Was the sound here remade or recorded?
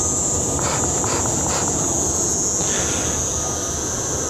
recorded